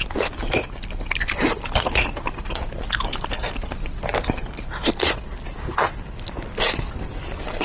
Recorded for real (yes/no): yes